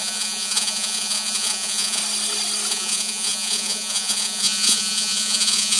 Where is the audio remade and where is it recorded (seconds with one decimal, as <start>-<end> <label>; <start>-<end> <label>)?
0.0-2.0 remade; 2.0-2.7 recorded; 2.7-5.8 remade